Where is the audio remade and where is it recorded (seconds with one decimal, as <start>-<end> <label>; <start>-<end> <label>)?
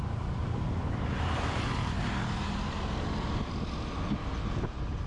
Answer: 0.0-0.4 recorded; 0.4-3.5 remade; 3.5-5.1 recorded